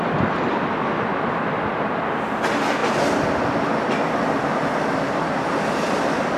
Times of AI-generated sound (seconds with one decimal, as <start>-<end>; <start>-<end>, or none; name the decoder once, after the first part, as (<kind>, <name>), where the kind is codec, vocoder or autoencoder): none